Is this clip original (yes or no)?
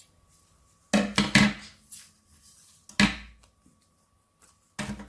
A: yes